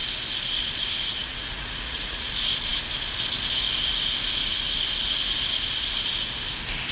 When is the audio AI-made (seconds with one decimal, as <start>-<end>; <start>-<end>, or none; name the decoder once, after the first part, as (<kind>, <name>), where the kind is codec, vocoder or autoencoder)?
1.2-2.3 (vocoder, Vocos)